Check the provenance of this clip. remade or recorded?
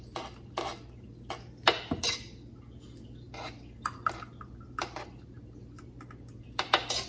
recorded